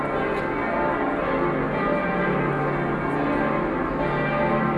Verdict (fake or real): real